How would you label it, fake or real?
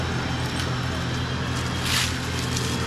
real